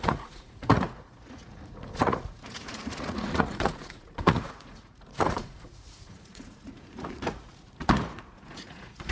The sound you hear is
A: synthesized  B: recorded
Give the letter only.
A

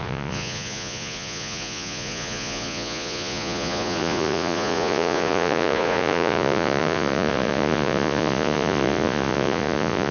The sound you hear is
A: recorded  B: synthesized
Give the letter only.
B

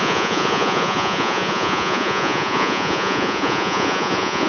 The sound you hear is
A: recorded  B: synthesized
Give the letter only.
B